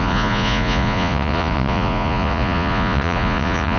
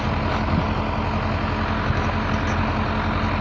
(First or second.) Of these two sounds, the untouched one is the second